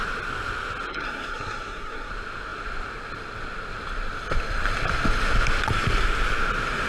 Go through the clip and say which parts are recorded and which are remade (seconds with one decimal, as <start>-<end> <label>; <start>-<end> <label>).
0.0-0.9 recorded; 0.9-2.1 remade; 2.1-6.9 recorded